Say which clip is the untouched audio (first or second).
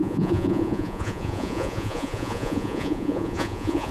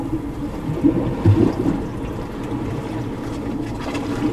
second